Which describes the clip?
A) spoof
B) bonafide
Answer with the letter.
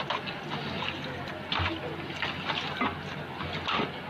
B